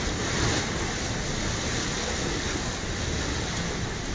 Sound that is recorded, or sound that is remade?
recorded